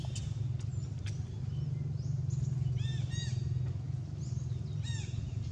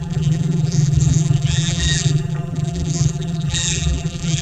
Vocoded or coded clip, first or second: second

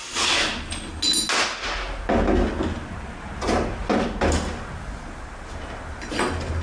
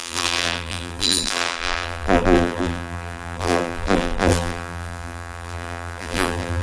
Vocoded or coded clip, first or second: second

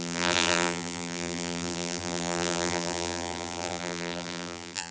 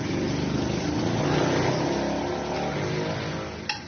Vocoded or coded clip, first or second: first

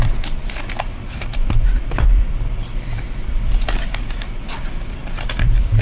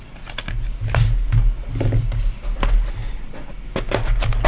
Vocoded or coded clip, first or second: first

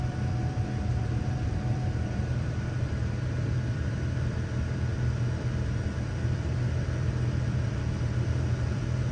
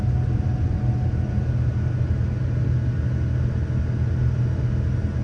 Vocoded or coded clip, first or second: first